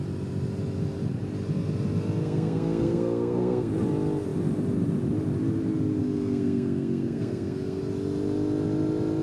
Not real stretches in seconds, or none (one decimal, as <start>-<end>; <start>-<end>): 2.2-3.7; 6.0-7.8